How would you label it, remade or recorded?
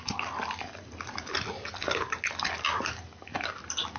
recorded